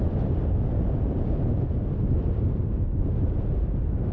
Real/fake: fake